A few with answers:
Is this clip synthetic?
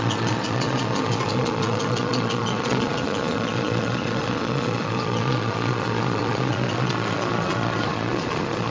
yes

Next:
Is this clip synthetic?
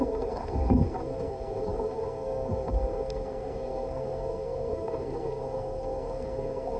yes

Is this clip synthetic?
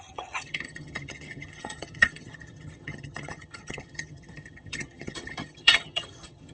yes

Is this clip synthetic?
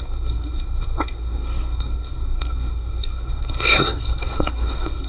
yes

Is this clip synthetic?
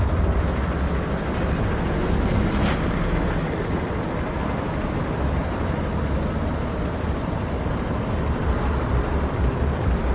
no